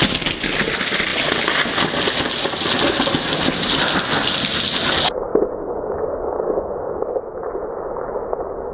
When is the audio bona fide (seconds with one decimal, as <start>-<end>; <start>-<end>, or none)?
0.0-5.3; 7.1-8.7